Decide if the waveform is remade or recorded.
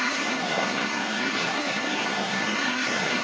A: remade